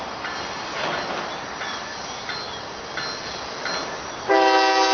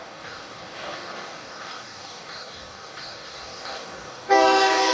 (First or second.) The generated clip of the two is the second